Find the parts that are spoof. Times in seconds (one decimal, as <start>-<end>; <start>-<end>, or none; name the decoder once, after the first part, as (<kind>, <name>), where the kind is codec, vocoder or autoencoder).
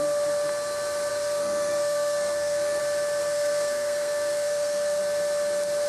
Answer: 1.1-2.8 (codec, SNAC); 3.2-5.0